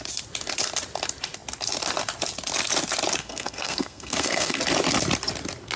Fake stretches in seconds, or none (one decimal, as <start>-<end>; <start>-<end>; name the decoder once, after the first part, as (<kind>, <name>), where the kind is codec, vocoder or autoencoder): 3.2-4.6 (codec, SNAC)